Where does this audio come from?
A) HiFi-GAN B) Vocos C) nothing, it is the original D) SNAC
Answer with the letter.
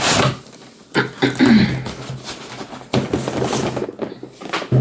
C